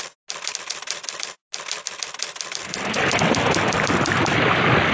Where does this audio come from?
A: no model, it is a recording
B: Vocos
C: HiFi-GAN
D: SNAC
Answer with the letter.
A